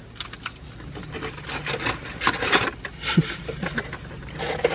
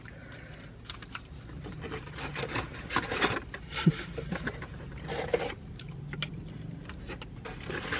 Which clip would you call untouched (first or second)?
first